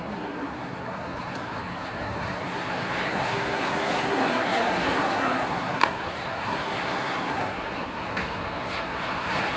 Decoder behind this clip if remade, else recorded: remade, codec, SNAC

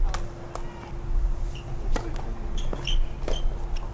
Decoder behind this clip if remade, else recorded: recorded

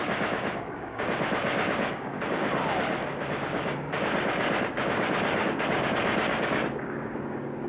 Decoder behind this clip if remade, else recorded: remade, codec, DAC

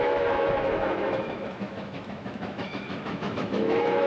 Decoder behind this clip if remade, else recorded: remade, autoencoder, DAC-VAE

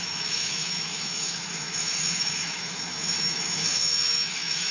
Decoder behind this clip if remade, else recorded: remade, autoencoder, DAC-VAE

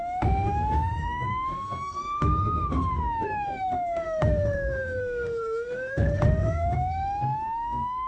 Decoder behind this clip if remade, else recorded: remade, autoencoder, DAC-VAE